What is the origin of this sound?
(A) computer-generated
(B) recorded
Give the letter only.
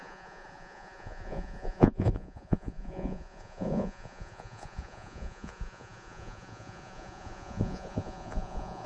A